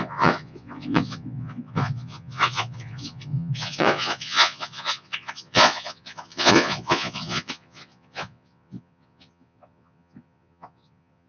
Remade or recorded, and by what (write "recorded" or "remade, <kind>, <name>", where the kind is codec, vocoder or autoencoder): remade, vocoder, Vocos